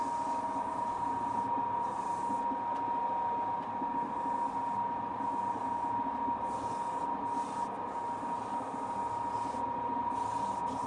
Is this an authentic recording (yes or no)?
yes